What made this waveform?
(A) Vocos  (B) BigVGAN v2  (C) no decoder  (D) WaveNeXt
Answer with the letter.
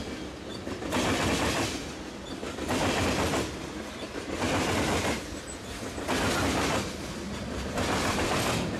C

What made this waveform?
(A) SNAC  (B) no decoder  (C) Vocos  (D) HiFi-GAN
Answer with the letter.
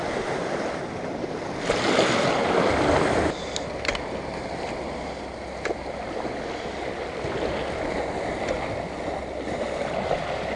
B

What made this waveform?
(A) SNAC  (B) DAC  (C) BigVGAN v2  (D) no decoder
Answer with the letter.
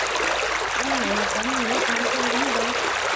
D